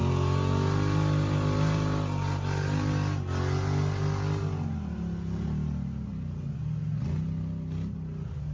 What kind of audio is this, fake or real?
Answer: real